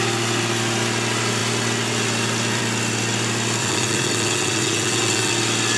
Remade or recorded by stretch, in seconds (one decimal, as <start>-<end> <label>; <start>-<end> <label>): 0.0-3.6 recorded; 3.6-5.3 remade; 5.3-5.8 recorded